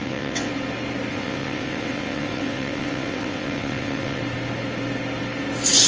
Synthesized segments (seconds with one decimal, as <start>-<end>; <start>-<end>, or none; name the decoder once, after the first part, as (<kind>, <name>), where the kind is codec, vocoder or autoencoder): 0.0-0.5 (vocoder, WaveNeXt); 1.1-4.2